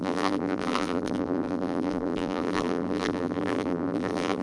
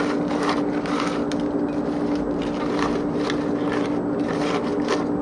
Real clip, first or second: second